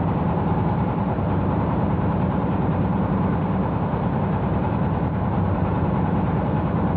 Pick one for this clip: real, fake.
fake